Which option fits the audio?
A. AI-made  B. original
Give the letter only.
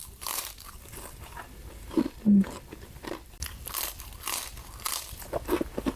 A